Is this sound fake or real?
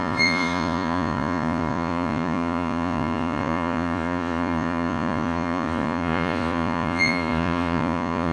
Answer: fake